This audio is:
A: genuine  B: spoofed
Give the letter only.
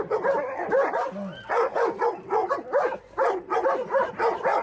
A